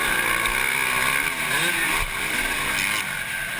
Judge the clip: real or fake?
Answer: real